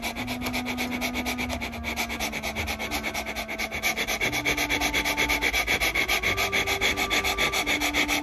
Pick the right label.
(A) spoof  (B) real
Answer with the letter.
B